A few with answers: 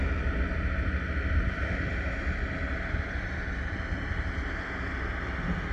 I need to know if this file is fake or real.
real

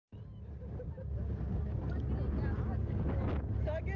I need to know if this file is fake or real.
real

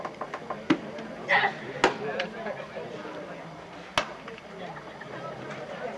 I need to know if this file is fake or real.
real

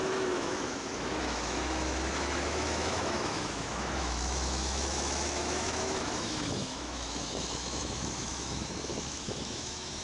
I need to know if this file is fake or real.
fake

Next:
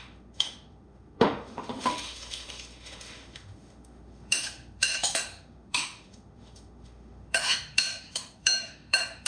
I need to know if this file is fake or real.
fake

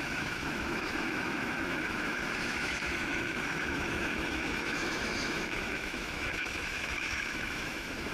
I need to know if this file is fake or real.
fake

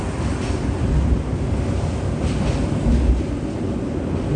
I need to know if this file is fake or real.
real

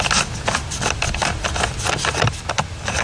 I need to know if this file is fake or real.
real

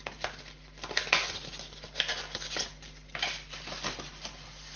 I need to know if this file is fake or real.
real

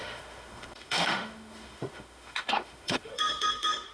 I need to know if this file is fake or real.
fake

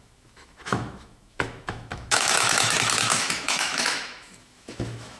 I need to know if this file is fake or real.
fake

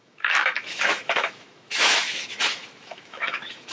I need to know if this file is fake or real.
fake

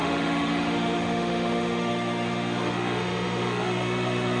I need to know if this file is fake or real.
fake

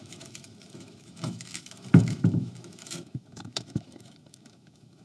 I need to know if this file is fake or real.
fake